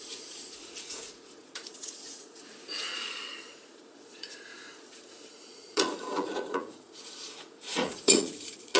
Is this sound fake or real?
fake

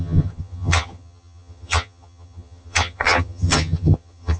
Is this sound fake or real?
fake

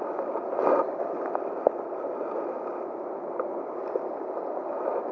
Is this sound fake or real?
real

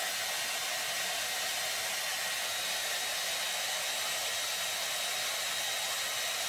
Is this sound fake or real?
real